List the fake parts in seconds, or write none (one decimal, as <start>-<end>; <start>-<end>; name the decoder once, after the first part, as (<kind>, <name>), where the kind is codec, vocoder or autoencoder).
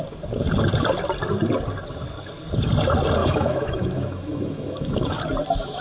3.2-5.2 (autoencoder, DAC-VAE)